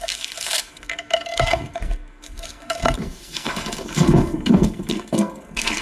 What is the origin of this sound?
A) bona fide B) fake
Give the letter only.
B